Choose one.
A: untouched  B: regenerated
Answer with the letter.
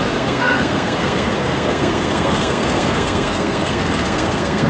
B